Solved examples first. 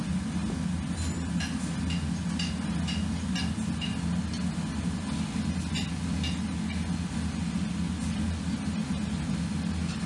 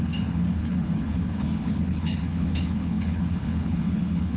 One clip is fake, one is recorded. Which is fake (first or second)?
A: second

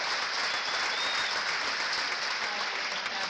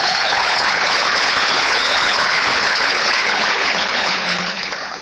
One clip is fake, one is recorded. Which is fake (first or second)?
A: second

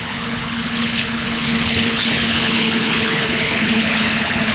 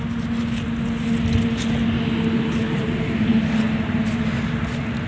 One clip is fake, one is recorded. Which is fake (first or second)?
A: first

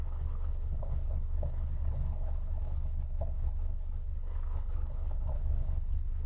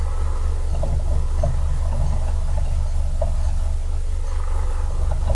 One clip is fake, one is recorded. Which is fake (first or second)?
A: first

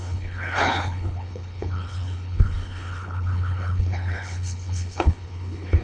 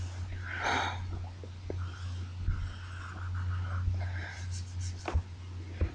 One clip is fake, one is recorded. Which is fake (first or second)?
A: first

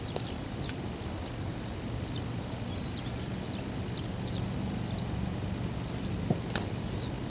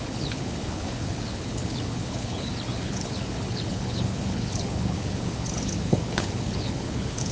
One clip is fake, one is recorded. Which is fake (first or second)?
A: second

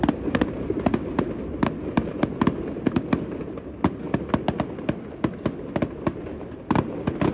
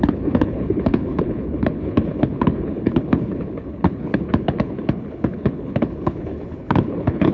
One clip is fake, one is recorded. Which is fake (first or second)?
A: second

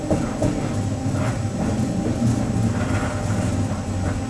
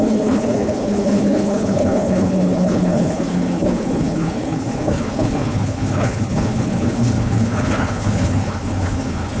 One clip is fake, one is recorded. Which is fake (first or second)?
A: second